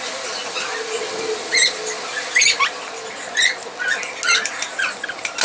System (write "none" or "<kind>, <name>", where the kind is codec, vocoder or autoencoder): none